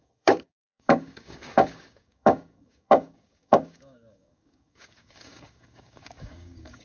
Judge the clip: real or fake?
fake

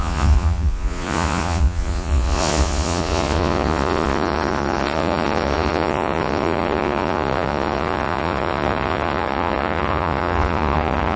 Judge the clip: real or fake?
fake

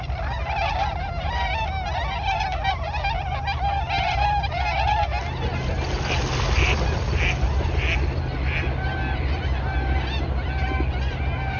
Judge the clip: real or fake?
real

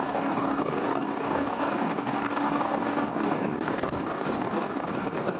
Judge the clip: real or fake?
fake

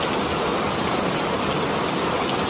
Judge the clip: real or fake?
real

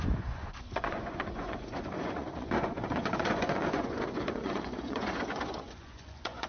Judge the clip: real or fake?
fake